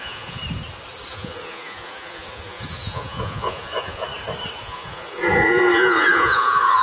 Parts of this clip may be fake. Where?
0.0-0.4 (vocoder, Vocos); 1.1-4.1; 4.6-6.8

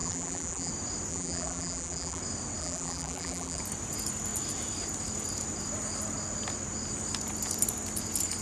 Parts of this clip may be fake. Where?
0.0-0.7 (vocoder, BigVGAN v2); 1.1-2.2; 2.6-3.6

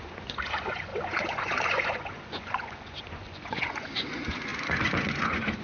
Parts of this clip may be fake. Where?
0.0-5.6 (vocoder, Vocos)

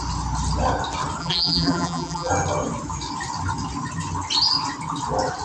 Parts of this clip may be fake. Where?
1.2-2.3 (vocoder, BigVGAN v2)